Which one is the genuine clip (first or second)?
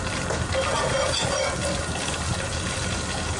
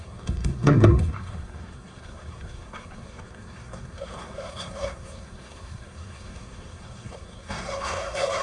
first